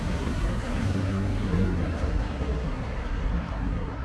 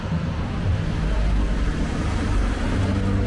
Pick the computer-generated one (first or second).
first